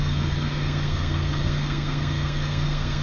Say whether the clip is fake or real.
fake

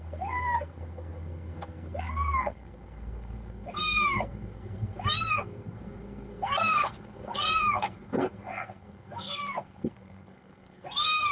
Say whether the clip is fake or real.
fake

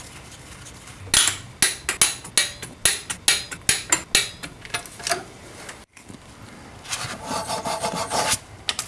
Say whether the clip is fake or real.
real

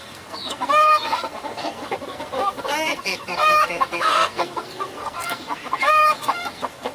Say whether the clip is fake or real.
fake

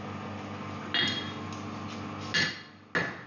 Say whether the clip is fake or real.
real